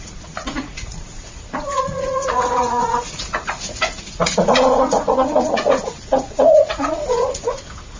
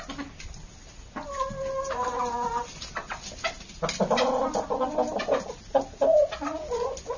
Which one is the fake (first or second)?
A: first